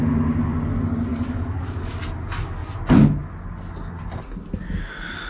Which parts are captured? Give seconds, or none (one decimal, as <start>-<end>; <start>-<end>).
0.0-1.1; 1.9-5.3